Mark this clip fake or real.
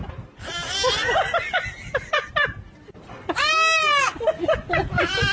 real